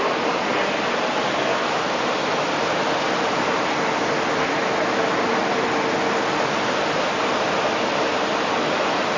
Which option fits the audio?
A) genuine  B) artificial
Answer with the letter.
A